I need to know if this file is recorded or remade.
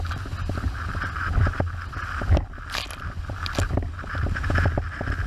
recorded